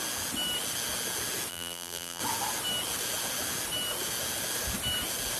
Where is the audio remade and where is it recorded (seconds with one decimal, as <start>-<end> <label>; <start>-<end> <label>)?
0.0-1.5 recorded; 1.5-2.2 remade; 2.2-5.4 recorded